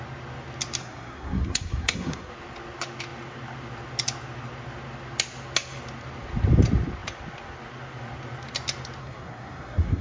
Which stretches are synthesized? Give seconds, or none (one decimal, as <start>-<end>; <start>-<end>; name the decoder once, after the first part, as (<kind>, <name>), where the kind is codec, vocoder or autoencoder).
0.8-2.3 (codec, SNAC); 9.0-10.0

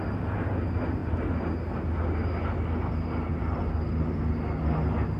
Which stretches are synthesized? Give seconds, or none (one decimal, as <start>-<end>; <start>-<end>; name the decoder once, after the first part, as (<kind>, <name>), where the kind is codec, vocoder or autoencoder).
3.3-4.2 (vocoder, BigVGAN v2)

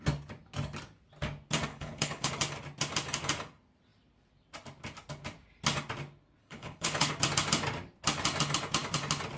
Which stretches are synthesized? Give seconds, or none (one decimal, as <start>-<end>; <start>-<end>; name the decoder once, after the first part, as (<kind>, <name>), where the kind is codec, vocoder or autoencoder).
1.7-2.3 (codec, HILCodec); 6.4-7.1

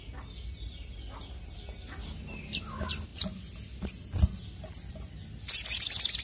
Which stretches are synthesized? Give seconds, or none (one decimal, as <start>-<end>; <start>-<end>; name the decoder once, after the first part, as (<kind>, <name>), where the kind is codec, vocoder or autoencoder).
none